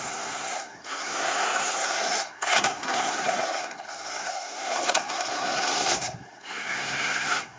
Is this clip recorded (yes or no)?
no